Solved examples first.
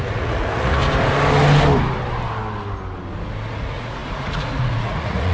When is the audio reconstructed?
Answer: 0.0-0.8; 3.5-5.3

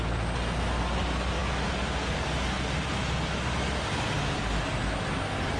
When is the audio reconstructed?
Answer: none

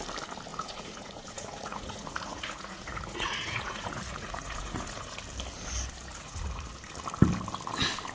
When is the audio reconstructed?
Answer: 0.5-5.2; 6.1-6.7

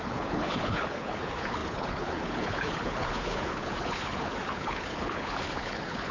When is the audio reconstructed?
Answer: 0.0-6.1

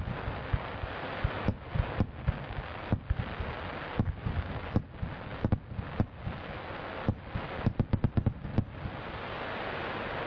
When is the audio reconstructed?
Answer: none

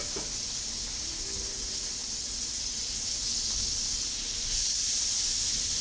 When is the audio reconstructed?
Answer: none

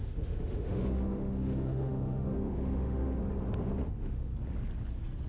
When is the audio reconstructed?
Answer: 0.0-3.2; 3.8-4.3

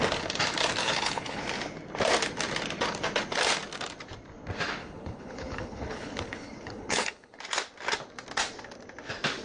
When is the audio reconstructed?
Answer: 0.8-1.4; 4.8-7.4